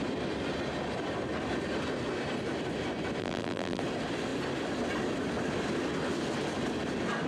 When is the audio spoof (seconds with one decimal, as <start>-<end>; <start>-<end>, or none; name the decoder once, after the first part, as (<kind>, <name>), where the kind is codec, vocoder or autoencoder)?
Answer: 3.2-3.8 (vocoder, BigVGAN v2)